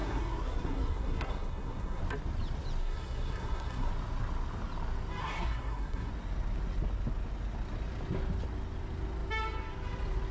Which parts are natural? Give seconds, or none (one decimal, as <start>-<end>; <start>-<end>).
2.0-2.8; 3.9-5.2; 6.1-10.3